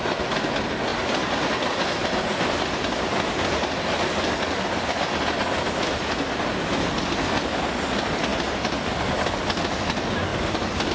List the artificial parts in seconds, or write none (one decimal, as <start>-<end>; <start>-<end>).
0.9-1.5; 10.3-10.9